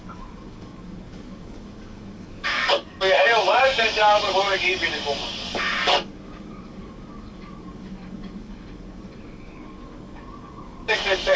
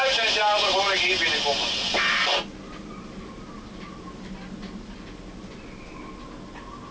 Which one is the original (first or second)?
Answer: second